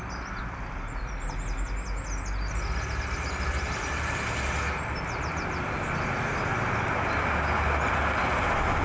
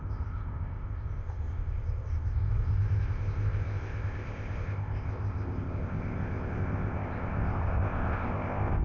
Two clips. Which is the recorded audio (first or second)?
first